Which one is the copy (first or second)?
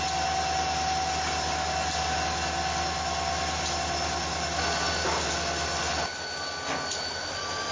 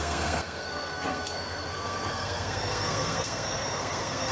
second